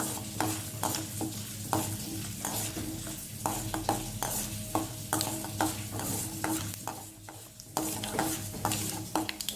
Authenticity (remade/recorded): recorded